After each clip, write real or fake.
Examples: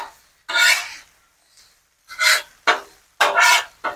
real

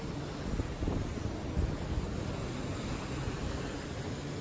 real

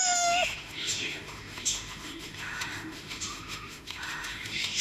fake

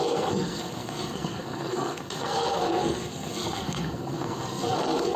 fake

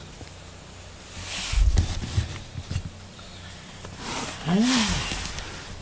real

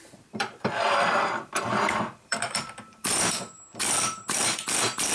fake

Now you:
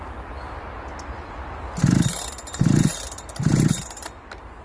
real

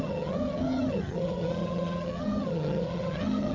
fake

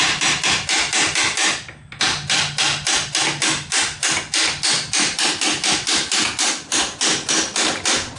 real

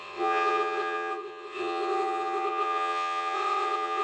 fake